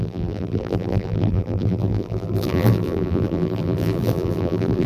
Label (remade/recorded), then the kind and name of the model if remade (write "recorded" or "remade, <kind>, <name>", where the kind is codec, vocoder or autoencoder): remade, vocoder, BigVGAN v2